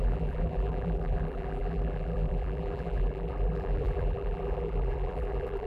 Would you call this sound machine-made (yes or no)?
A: yes